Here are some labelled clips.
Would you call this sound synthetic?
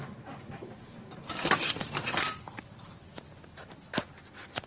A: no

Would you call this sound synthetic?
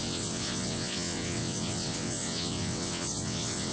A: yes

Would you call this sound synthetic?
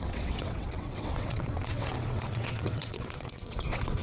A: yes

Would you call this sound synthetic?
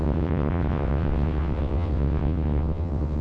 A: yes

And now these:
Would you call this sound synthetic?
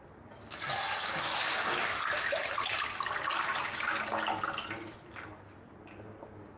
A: no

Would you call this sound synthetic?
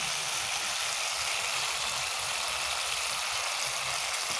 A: no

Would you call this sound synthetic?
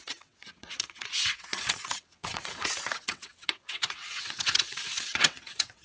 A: yes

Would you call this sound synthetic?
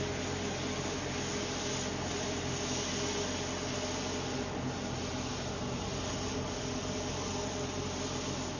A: no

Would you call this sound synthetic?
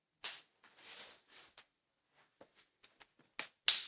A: no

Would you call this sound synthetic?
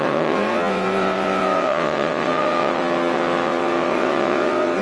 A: yes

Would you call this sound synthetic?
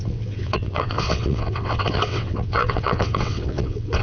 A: yes